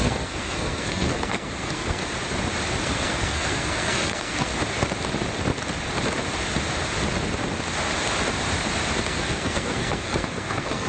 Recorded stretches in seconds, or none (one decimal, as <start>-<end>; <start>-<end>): 2.0-2.8; 4.5-9.0